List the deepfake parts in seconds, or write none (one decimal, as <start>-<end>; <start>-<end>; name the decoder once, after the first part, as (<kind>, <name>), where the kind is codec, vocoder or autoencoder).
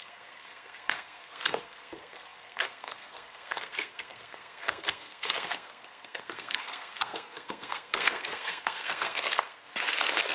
0.0-9.7 (codec, SNAC)